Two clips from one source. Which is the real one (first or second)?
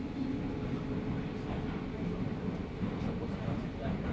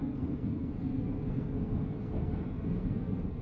first